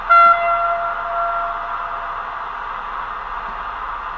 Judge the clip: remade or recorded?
recorded